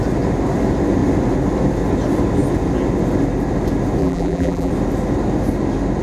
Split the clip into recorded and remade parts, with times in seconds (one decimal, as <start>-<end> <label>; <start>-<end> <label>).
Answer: 0.0-4.0 recorded; 4.0-4.7 remade; 4.7-6.0 recorded